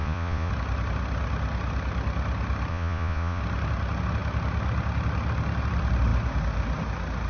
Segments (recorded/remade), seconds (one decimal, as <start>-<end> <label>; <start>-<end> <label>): 0.0-0.5 remade; 0.5-2.7 recorded; 2.7-3.4 remade; 3.4-7.3 recorded